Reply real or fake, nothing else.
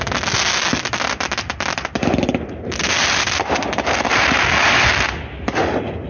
real